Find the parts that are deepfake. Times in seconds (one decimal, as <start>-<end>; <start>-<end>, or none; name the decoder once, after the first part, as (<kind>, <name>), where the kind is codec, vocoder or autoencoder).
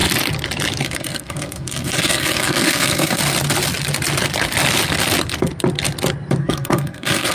0.8-3.2 (codec, SNAC); 6.4-7.3